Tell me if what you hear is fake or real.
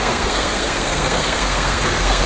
fake